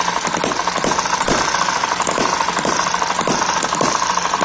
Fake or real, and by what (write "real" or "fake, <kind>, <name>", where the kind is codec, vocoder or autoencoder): real